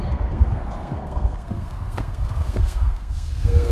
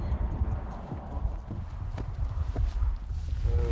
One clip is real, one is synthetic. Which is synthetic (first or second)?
first